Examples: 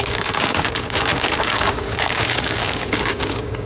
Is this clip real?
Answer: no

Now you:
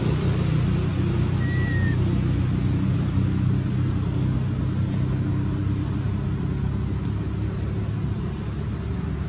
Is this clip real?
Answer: yes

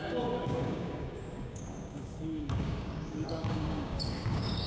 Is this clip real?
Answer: no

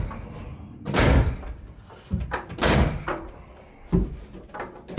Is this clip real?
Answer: yes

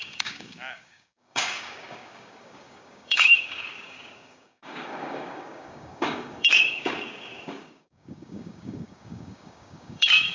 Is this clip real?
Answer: no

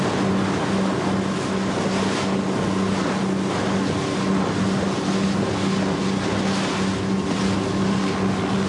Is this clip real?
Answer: yes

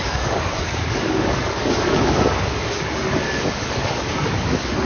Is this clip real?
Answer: no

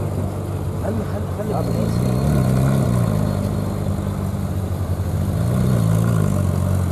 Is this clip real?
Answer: yes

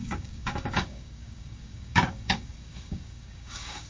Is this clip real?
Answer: no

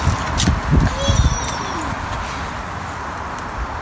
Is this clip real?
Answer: yes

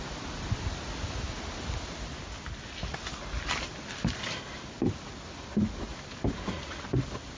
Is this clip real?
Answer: yes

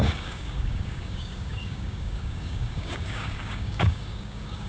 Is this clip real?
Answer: no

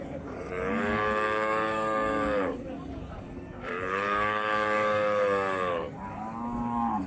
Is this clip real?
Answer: no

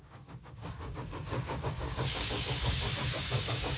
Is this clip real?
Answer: no